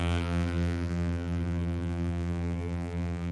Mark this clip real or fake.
fake